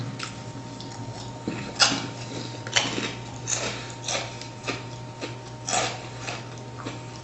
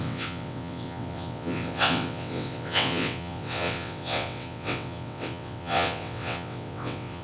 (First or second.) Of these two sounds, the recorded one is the first